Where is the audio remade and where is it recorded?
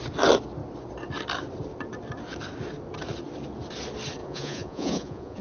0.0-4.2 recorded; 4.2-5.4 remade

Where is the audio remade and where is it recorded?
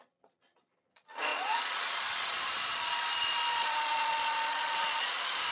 0.0-5.5 remade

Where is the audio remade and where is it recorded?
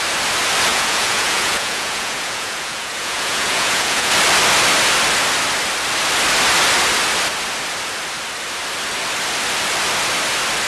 0.0-0.7 recorded; 0.7-4.1 remade; 4.1-10.7 recorded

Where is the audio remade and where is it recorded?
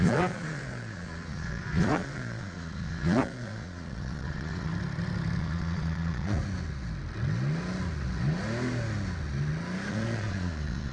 0.0-4.7 remade; 4.7-5.4 recorded; 5.4-6.4 remade; 6.4-9.9 recorded; 9.9-10.9 remade